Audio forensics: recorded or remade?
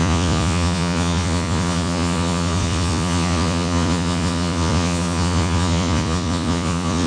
remade